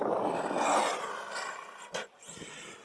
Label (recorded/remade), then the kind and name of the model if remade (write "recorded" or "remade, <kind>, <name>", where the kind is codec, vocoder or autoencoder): recorded